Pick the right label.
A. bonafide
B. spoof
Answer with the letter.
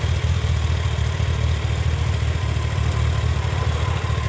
A